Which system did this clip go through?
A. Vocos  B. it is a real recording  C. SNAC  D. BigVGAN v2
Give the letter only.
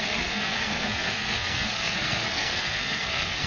C